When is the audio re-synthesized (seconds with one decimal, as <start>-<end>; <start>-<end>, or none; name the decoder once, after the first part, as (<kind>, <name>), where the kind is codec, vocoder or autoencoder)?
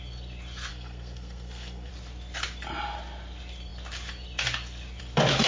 0.7-1.9 (codec, SNAC)